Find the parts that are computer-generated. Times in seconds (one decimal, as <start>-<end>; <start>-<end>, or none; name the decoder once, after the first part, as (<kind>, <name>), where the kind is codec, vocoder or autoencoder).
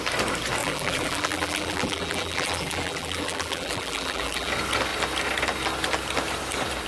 0.6-4.5 (vocoder, BigVGAN v2)